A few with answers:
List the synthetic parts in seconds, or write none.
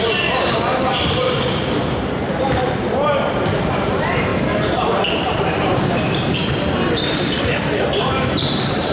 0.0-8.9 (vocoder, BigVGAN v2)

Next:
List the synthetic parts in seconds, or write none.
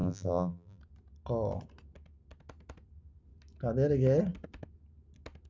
0.0-0.8 (vocoder, BigVGAN v2)